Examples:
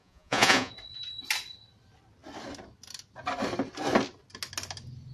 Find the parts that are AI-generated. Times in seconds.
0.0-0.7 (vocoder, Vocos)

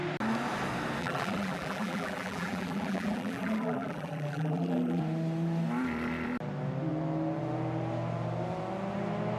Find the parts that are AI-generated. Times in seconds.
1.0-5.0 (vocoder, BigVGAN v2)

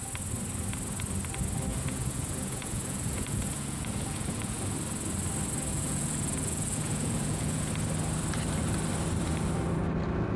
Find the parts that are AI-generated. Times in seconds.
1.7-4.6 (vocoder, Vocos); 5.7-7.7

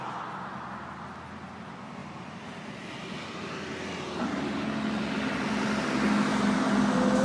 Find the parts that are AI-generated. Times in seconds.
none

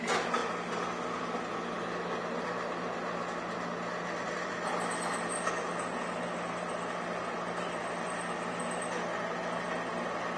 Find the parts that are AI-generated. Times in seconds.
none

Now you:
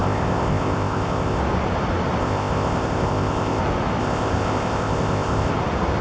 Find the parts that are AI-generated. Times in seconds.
0.0-1.4 (codec, ZipCodec); 2.2-3.6; 4.0-5.5